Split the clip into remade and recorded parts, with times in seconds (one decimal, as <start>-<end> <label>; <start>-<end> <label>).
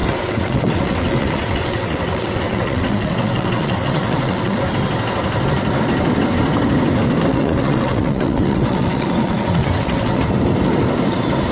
0.0-4.6 remade; 4.6-7.3 recorded; 7.3-10.2 remade; 10.2-11.5 recorded